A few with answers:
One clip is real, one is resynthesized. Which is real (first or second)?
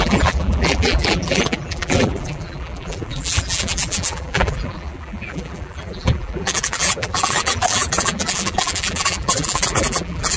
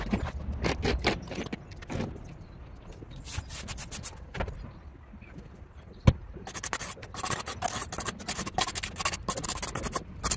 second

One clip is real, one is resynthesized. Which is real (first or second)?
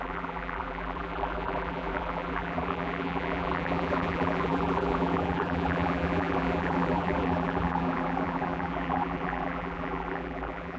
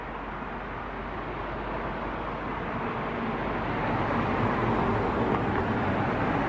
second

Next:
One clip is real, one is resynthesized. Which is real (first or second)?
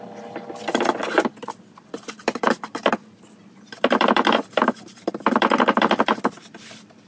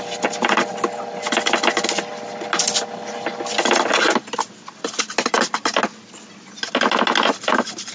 second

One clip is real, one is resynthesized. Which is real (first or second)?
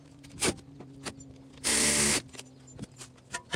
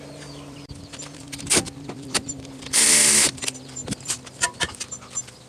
first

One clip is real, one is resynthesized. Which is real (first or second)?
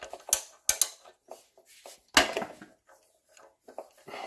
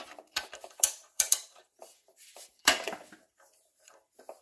first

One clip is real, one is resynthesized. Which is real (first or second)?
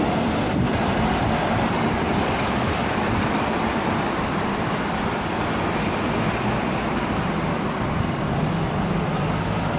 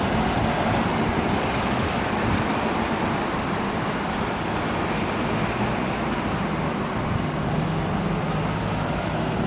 second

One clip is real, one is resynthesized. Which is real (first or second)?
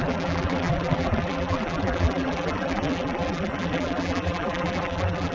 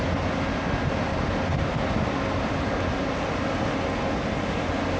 second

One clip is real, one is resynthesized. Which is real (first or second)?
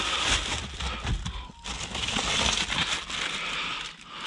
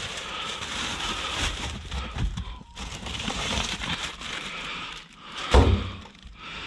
first